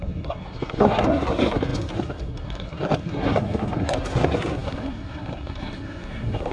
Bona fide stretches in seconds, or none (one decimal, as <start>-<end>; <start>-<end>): none